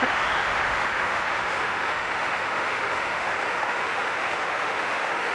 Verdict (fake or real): fake